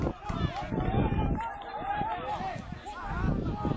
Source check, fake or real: real